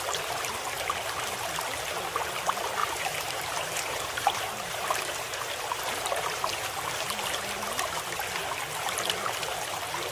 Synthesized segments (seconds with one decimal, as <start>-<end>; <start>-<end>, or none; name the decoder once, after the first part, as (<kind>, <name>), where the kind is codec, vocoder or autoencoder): 2.8-8.0 (vocoder, BigVGAN v2)